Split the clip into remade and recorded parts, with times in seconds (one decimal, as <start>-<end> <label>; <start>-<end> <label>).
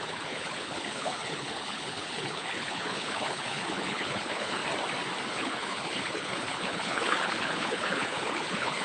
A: 0.0-4.6 remade; 4.6-5.3 recorded; 5.3-8.8 remade